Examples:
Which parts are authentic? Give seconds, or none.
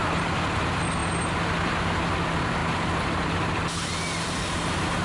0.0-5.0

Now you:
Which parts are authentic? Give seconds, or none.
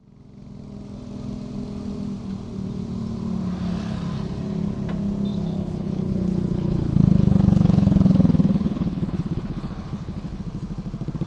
0.0-5.3; 10.4-11.3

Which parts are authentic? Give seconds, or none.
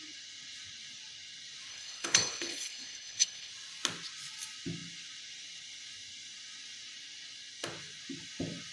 0.0-1.7; 3.5-8.7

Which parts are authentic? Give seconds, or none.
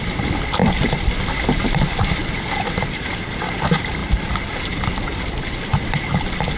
0.0-6.6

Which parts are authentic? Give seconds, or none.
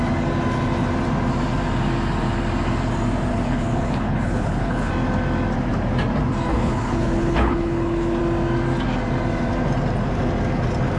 0.0-3.3; 4.9-6.5; 8.2-11.0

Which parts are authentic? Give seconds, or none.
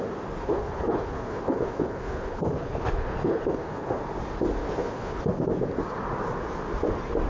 0.0-0.4; 4.0-4.6; 5.2-7.3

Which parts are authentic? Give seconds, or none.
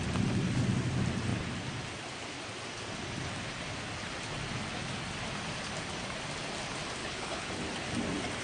0.0-7.0; 7.5-8.4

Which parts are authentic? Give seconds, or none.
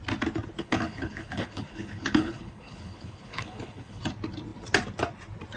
0.0-0.6; 4.0-5.6